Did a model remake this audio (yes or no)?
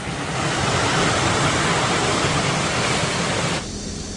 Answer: no